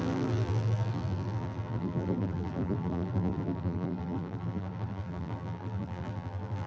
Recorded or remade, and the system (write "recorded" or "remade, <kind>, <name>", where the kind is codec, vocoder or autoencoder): remade, vocoder, BigVGAN v2